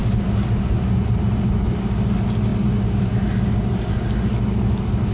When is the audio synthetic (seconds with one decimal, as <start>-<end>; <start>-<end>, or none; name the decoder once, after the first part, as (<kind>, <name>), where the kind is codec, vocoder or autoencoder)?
none